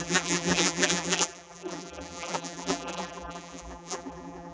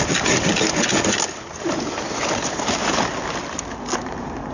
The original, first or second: second